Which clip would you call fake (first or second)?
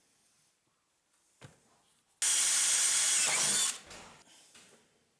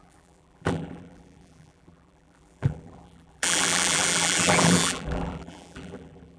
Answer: second